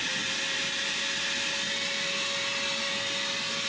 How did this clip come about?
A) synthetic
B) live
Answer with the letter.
B